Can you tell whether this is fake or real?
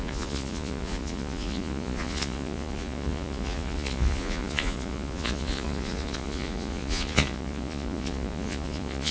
fake